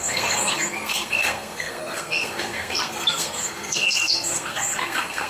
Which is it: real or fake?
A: fake